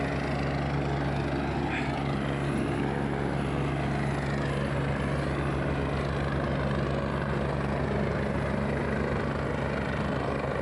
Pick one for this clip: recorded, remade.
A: recorded